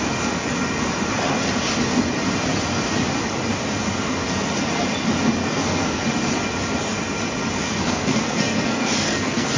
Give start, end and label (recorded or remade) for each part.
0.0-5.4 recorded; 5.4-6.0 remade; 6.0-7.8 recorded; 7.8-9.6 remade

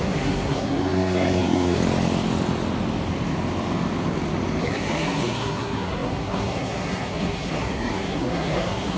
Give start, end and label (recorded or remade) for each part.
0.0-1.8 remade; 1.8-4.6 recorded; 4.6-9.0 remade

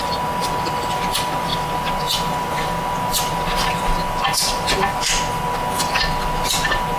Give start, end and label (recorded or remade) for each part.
0.0-7.0 recorded